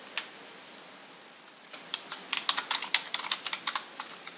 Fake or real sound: real